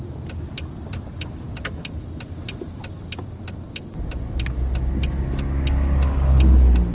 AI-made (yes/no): no